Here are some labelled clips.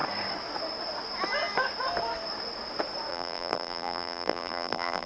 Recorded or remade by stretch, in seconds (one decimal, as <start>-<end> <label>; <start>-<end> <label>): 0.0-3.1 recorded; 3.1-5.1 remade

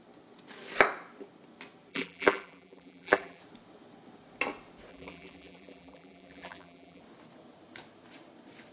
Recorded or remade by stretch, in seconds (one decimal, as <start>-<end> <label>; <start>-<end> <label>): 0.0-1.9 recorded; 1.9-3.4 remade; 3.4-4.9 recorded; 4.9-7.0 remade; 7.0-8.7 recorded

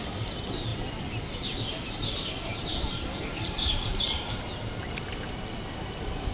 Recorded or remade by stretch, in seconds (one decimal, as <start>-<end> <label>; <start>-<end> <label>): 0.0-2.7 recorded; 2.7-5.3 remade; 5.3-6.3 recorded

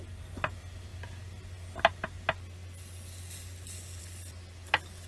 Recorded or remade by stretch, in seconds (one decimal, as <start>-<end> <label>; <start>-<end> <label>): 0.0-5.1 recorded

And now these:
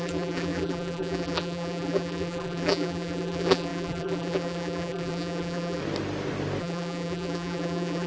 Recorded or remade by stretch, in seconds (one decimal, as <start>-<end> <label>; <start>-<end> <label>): 0.0-5.8 remade; 5.8-6.6 recorded; 6.6-8.1 remade

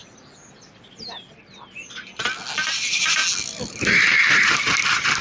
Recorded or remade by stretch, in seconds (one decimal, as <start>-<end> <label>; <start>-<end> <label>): 0.0-2.7 recorded; 2.7-3.2 remade; 3.2-3.8 recorded; 3.8-5.2 remade

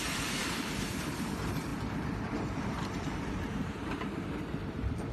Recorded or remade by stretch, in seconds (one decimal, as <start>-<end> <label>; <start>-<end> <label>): 0.0-5.1 remade

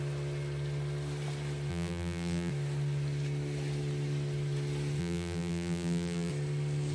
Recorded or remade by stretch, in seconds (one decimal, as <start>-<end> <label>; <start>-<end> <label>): 0.0-1.7 recorded; 1.7-2.5 remade; 2.5-5.0 recorded; 5.0-6.3 remade; 6.3-6.9 recorded